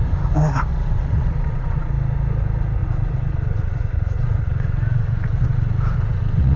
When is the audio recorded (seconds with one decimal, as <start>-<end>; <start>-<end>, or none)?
0.0-0.7; 1.9-2.8

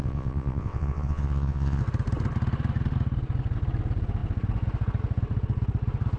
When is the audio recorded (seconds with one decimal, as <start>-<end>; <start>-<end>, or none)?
1.8-6.2

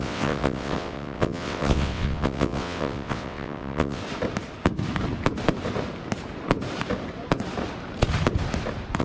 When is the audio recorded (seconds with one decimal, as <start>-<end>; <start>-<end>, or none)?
4.0-9.0

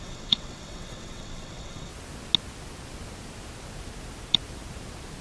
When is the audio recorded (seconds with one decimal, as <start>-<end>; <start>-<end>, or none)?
1.9-5.2

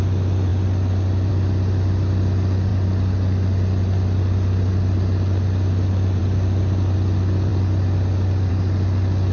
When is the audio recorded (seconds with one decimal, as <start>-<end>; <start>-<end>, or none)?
0.0-9.3

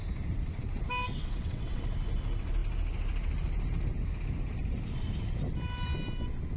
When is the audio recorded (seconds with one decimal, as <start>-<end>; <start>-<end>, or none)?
0.0-1.1; 1.8-6.6